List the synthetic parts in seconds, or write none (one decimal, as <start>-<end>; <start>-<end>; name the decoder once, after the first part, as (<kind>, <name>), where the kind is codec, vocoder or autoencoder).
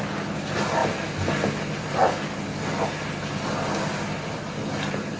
none